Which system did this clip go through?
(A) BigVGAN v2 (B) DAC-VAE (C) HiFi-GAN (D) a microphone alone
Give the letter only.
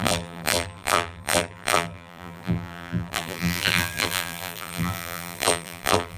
A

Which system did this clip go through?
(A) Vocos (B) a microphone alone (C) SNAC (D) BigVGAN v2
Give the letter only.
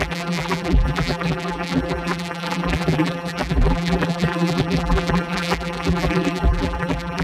D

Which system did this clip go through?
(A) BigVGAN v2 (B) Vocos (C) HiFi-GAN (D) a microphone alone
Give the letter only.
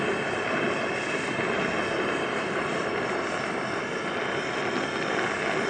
D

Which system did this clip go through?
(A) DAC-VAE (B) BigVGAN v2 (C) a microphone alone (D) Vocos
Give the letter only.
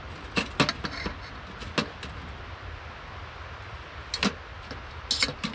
C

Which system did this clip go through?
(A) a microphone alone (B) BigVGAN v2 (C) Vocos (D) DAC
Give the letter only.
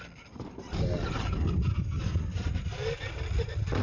A